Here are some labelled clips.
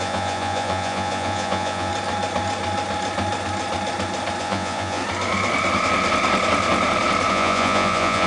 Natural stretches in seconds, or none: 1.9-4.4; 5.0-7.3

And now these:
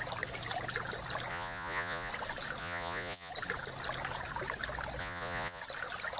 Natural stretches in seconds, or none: 0.0-1.3; 2.1-2.6; 3.3-5.0; 5.6-6.2

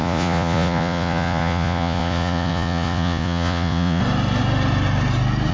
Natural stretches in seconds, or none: 4.0-5.5

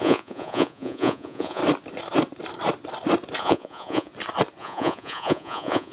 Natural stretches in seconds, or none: 1.6-3.4; 4.1-4.6

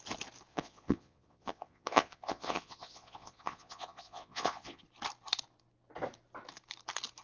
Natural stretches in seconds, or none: 0.0-0.5; 4.8-7.2